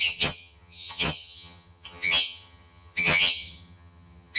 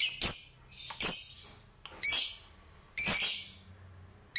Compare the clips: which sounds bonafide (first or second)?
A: second